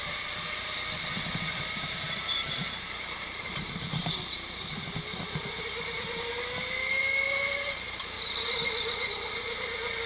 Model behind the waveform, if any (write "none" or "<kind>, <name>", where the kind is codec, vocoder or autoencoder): none